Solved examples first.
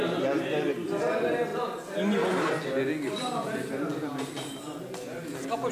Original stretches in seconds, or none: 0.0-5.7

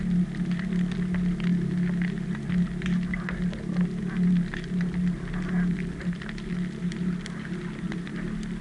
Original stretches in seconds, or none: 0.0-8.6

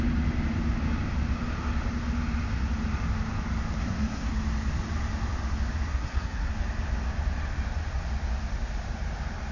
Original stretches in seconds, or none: 0.0-3.8; 4.3-5.9; 6.5-9.5